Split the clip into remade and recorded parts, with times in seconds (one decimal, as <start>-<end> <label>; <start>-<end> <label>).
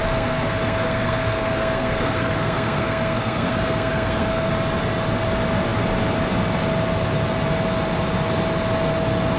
0.0-4.5 remade; 4.5-9.4 recorded